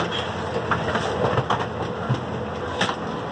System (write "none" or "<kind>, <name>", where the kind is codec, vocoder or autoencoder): none